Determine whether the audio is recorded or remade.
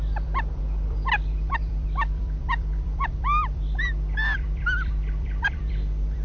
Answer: remade